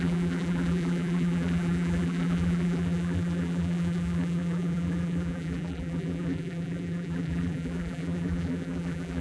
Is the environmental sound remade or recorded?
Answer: remade